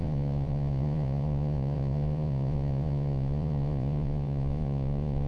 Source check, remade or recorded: remade